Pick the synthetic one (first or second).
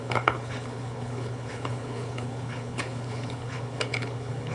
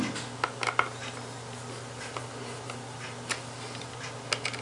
first